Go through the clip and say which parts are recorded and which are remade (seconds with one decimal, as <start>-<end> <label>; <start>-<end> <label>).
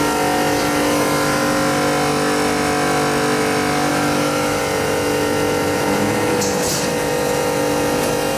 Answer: 0.0-3.9 recorded; 3.9-4.6 remade; 4.6-8.4 recorded